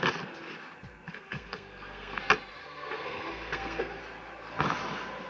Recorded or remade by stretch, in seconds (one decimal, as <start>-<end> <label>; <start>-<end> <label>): 0.0-1.1 recorded; 1.1-2.2 remade; 2.2-2.6 recorded; 2.6-4.0 remade; 4.0-5.3 recorded